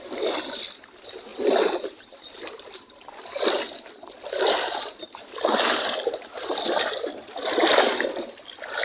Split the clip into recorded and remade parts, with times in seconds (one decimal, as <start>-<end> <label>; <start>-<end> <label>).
0.0-1.3 remade; 1.3-1.8 recorded; 1.8-8.8 remade